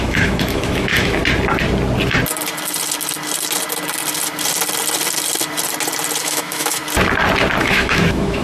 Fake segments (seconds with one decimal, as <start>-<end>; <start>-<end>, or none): 0.0-1.2; 6.2-6.8; 7.6-8.4